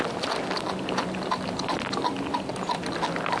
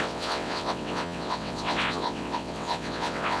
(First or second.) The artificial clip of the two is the second